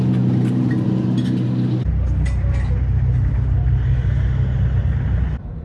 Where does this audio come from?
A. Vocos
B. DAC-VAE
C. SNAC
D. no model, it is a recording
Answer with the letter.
D